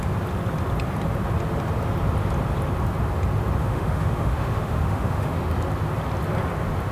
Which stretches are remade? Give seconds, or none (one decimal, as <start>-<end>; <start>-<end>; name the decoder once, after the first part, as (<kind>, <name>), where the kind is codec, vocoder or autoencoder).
3.6-5.5 (autoencoder, DAC-VAE)